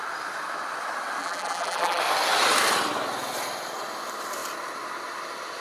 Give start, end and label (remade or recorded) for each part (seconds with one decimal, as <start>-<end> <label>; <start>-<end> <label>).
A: 0.0-1.2 recorded; 1.2-2.0 remade; 2.0-5.6 recorded

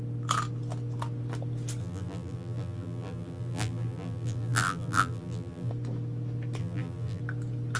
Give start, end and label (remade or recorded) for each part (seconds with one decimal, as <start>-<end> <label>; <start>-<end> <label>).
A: 0.0-1.8 recorded; 1.8-5.7 remade; 5.7-6.6 recorded; 6.6-7.2 remade; 7.2-7.8 recorded

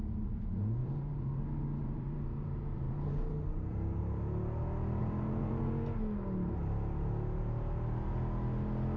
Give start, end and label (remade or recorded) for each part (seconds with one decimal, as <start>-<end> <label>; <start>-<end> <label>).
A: 0.0-0.8 recorded; 0.8-1.4 remade; 1.4-1.8 recorded; 1.8-4.0 remade; 4.0-5.0 recorded; 5.0-5.7 remade; 5.7-9.0 recorded

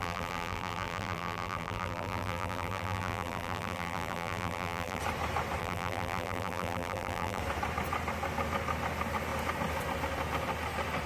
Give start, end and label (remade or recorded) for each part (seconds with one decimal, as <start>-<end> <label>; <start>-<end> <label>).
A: 0.0-5.0 remade; 5.0-5.6 recorded; 5.6-7.4 remade; 7.4-11.1 recorded

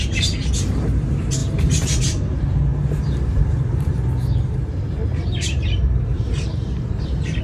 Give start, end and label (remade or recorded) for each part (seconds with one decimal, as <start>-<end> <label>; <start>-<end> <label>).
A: 0.0-7.4 remade

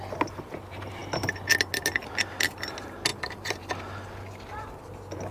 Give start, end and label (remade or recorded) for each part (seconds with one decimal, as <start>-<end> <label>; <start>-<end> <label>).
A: 0.0-3.1 recorded; 3.1-3.7 remade; 3.7-5.3 recorded